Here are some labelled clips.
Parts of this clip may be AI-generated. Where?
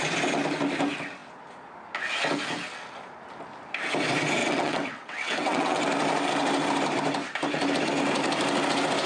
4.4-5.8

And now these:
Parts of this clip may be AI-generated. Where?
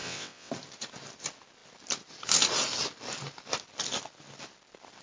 0.0-0.5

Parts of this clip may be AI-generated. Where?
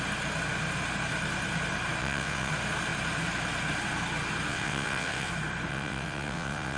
2.0-2.5; 4.5-5.3; 5.7-6.8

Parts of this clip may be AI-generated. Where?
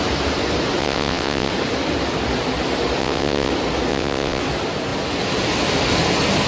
0.8-1.5; 3.0-3.5; 3.9-4.4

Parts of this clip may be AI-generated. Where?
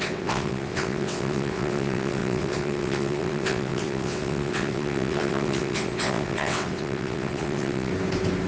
0.0-7.9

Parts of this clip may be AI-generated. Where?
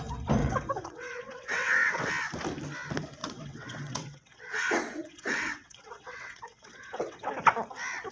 0.4-2.1; 3.2-7.3